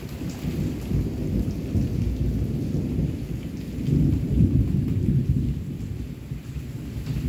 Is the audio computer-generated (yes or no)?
no